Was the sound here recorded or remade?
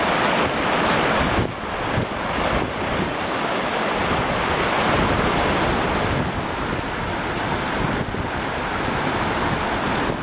recorded